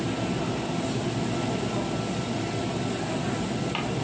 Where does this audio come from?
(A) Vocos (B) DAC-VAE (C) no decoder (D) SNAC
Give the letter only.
C